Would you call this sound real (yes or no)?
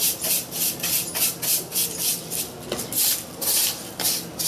yes